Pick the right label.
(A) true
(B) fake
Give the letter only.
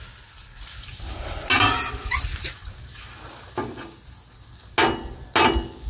A